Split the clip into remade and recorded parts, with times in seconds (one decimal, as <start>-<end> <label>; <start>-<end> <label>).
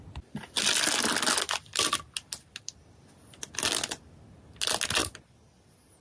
0.0-6.0 recorded